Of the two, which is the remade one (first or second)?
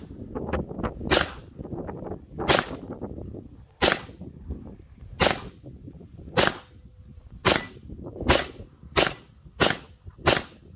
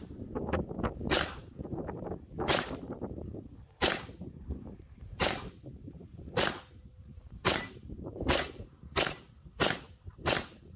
second